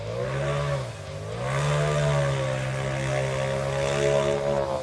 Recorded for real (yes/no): yes